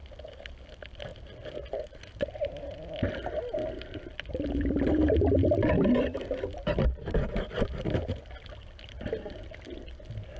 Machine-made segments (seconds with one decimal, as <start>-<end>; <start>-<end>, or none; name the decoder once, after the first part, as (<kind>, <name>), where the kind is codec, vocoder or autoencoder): 4.1-6.8 (vocoder, BigVGAN v2)